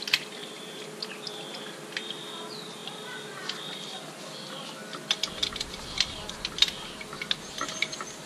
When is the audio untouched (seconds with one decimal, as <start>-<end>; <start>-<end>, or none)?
0.0-0.4; 2.1-2.8; 3.7-5.4; 6.3-8.3